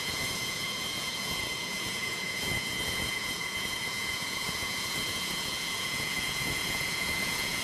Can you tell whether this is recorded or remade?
remade